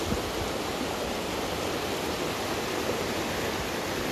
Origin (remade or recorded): recorded